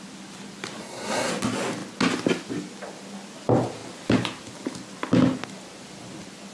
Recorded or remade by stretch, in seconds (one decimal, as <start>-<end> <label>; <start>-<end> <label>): 0.0-0.8 recorded; 0.8-1.3 remade; 1.3-6.5 recorded